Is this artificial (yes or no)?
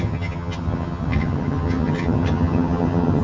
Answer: yes